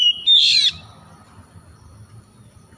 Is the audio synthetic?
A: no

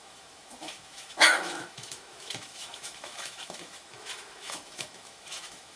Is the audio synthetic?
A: yes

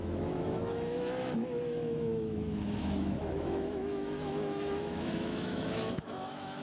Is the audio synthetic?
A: yes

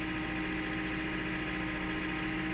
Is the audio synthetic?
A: no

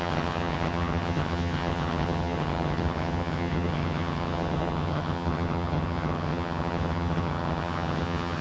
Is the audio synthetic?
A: yes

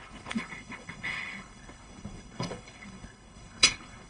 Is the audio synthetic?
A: yes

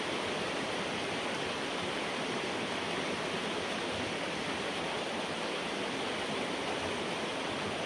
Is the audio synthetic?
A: no